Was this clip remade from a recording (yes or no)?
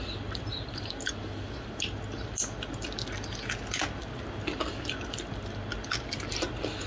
no